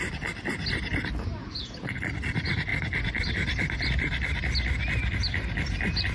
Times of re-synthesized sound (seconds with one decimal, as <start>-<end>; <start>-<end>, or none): 1.4-2.0